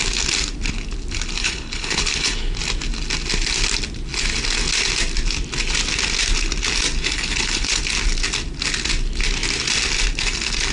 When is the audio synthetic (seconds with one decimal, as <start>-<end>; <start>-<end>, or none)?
1.4-2.6; 7.0-7.8